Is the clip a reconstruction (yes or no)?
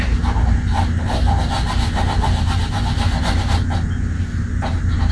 no